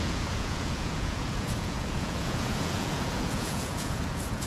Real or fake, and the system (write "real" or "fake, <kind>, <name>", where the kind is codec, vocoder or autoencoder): fake, vocoder, Vocos